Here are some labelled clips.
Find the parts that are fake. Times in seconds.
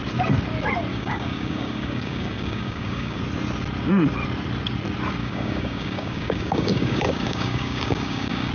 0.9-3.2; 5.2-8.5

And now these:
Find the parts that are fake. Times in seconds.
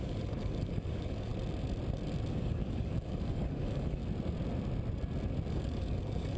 0.0-1.3; 2.3-4.0; 5.5-6.4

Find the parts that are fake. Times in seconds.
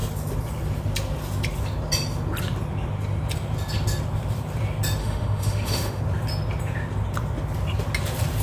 5.0-6.0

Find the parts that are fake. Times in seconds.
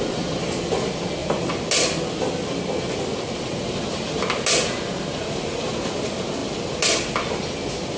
none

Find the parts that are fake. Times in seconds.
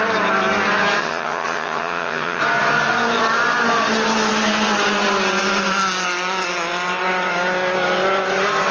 1.0-2.4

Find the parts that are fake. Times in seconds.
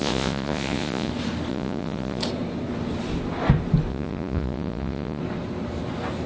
0.0-1.1; 1.5-2.2; 3.9-5.2